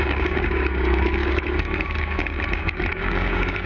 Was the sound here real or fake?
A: fake